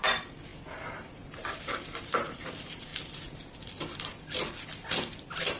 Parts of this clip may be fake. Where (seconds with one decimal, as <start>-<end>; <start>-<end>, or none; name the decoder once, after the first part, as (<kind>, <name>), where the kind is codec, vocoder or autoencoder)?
0.0-0.5 (vocoder, BigVGAN v2); 1.5-2.9; 4.3-5.6